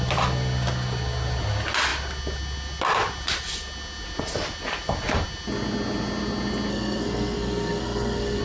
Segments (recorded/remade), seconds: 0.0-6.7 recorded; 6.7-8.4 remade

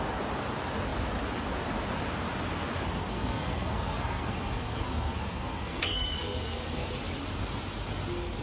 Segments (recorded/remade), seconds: 0.0-3.0 recorded; 3.0-6.9 remade; 6.9-8.4 recorded

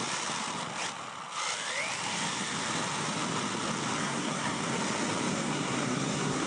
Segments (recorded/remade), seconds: 0.0-4.0 recorded; 4.0-4.6 remade; 4.6-5.3 recorded; 5.3-6.5 remade

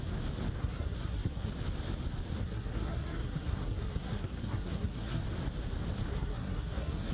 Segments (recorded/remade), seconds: 0.0-0.6 recorded; 0.6-1.5 remade; 1.5-2.4 recorded; 2.4-5.2 remade; 5.2-6.1 recorded; 6.1-7.1 remade

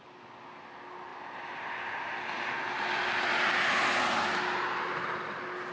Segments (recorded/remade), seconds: 0.0-5.7 recorded

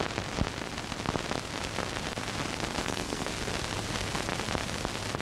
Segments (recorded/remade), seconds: 0.0-2.8 recorded; 2.8-3.3 remade; 3.3-5.2 recorded

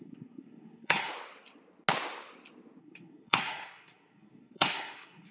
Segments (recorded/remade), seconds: 0.0-1.1 remade; 1.1-2.8 recorded; 2.8-5.3 remade

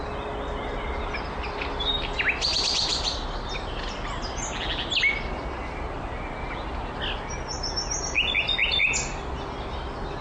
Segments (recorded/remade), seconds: 0.0-10.2 recorded